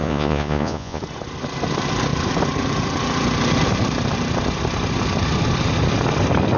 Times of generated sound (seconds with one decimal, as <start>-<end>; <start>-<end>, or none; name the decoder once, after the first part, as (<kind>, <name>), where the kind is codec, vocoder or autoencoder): 0.0-1.0 (vocoder, Vocos)